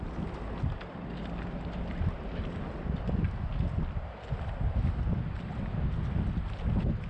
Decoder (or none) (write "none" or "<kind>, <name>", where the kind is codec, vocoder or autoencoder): none